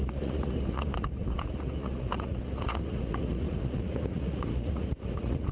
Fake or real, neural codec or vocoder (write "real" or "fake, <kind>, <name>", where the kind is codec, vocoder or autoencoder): fake, vocoder, Vocos